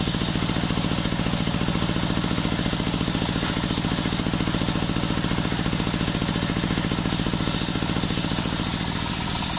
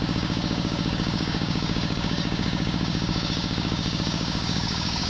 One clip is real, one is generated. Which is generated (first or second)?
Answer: second